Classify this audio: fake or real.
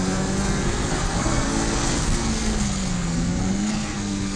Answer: fake